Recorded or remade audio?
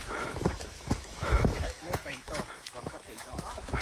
remade